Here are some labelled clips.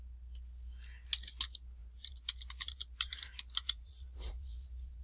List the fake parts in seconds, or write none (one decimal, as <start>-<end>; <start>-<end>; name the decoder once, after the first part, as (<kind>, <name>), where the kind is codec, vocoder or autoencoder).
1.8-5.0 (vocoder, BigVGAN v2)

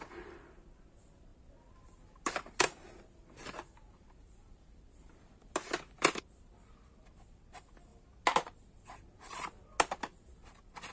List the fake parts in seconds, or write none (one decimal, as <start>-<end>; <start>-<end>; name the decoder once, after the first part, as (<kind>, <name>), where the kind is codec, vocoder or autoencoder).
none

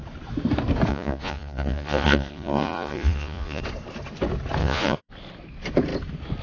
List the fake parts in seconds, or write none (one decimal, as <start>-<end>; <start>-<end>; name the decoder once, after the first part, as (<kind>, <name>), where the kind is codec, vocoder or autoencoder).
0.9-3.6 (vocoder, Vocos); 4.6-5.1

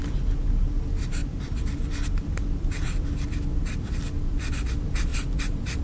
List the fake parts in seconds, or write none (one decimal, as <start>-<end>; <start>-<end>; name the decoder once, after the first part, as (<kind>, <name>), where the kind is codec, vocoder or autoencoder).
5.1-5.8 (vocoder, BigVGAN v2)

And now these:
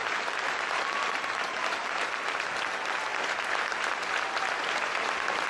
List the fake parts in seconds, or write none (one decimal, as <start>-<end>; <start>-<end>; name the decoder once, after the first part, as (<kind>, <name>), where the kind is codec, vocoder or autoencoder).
0.0-2.1 (vocoder, BigVGAN v2)